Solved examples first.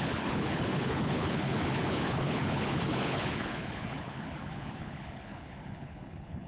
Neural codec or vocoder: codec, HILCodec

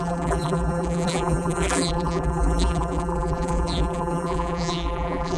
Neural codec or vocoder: vocoder, BigVGAN v2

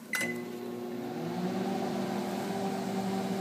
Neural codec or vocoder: none